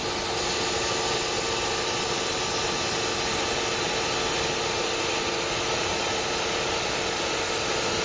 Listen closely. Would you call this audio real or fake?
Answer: real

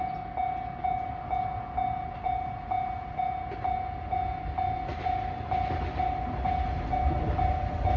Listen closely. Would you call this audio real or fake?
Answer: real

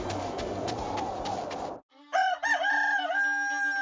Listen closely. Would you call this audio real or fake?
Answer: real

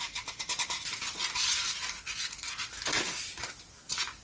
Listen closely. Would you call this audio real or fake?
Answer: real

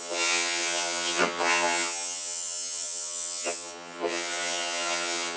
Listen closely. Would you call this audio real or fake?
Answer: fake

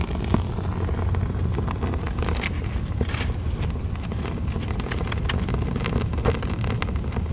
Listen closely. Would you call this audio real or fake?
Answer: real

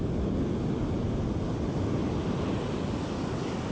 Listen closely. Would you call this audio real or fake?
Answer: real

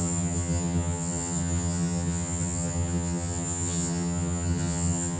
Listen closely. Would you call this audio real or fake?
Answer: fake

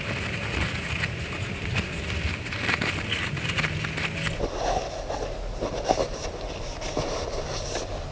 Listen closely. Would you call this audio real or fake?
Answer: real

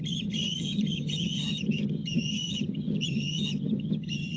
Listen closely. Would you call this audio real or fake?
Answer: fake